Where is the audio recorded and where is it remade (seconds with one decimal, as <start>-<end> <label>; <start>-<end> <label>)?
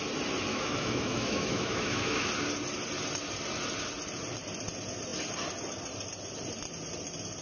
0.0-0.5 recorded; 0.5-2.3 remade; 2.3-7.4 recorded